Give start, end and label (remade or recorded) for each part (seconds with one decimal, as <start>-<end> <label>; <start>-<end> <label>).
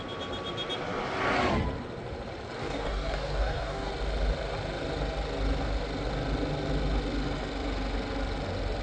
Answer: 0.0-2.6 recorded; 2.6-3.9 remade; 3.9-8.8 recorded